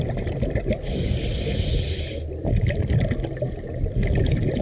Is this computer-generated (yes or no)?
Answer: no